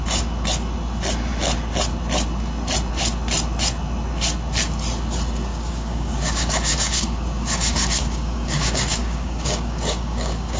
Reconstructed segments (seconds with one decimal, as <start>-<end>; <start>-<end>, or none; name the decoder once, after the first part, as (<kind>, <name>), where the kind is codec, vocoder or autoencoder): 5.5-10.6 (codec, DAC)

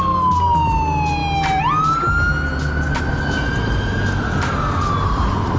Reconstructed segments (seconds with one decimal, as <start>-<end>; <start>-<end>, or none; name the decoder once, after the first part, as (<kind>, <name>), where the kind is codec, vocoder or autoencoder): none

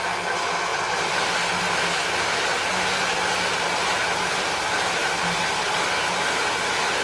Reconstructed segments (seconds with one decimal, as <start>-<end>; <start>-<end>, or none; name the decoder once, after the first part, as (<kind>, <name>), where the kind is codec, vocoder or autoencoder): 5.0-5.8 (vocoder, BigVGAN v2)

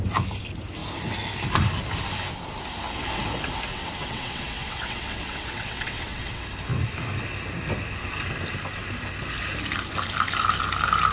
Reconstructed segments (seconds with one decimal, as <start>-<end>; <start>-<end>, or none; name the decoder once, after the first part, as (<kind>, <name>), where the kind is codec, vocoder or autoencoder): 3.7-6.4 (vocoder, WaveNeXt)

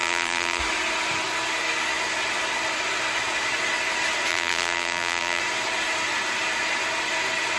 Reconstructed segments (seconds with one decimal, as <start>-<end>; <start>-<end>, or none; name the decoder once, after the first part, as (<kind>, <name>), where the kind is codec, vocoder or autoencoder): 0.0-0.6 (vocoder, BigVGAN v2); 4.3-5.4

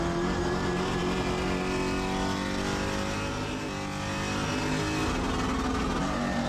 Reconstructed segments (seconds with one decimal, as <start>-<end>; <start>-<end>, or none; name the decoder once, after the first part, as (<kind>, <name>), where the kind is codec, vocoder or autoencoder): none

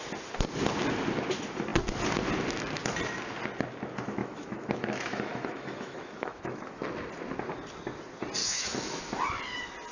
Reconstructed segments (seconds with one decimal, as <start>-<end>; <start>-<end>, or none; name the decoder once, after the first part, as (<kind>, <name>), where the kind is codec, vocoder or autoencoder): 4.2-6.8 (autoencoder, DAC-VAE); 8.4-9.0